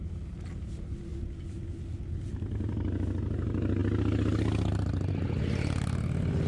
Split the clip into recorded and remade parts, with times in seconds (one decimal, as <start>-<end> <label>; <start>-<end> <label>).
0.0-6.5 recorded